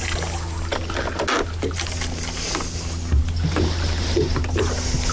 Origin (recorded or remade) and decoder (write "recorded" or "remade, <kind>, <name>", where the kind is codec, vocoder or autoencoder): recorded